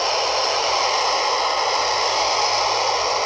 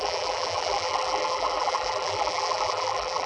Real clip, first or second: first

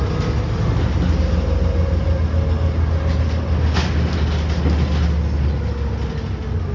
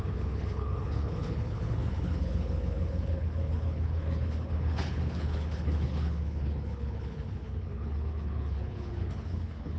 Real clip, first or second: first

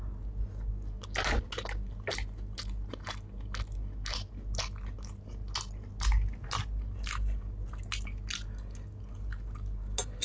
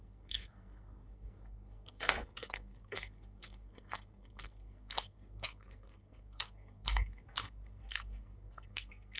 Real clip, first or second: first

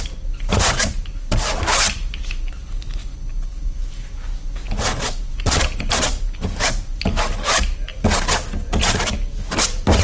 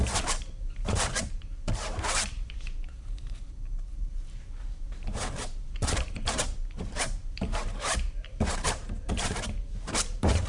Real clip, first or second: first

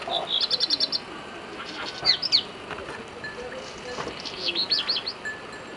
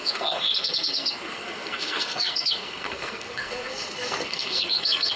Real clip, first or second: first